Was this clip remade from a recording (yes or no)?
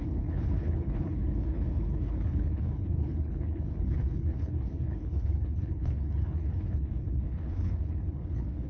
yes